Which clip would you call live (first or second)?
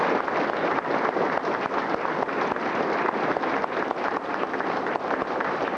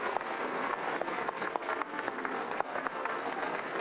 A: first